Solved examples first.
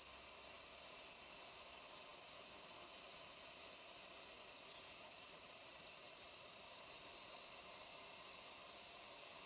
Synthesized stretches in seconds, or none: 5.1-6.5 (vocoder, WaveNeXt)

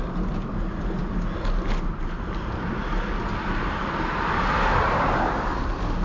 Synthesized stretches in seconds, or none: none

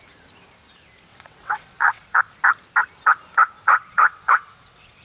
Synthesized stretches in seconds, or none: 1.1-2.2 (vocoder, WaveNeXt); 3.7-5.0

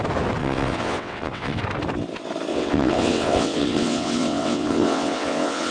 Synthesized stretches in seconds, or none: 0.4-1.6 (vocoder, WaveNeXt); 2.5-5.7

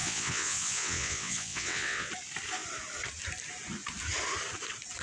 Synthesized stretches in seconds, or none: 0.0-2.1 (vocoder, WaveNeXt)